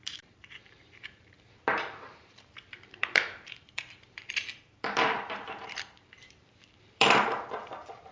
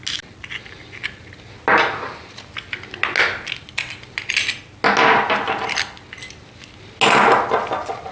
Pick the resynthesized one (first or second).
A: first